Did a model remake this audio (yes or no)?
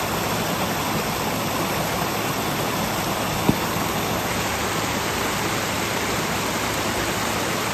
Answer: no